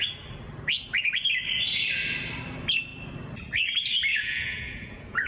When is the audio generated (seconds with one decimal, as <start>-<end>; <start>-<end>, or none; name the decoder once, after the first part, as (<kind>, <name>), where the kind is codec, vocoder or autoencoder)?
4.1-5.3 (vocoder, Vocos)